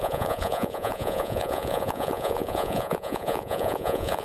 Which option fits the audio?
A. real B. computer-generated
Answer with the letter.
B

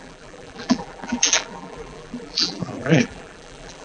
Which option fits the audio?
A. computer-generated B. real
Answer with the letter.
A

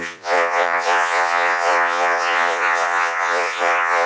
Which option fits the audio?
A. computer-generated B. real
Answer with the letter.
A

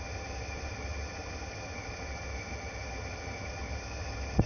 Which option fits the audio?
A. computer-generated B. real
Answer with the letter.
A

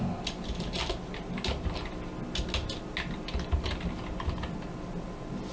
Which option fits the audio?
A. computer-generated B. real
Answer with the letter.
B